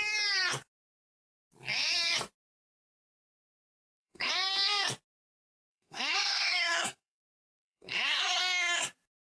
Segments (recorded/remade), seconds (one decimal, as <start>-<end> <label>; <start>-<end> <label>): 0.0-3.6 recorded; 3.6-4.3 remade; 4.3-5.7 recorded; 5.7-8.4 remade; 8.4-9.3 recorded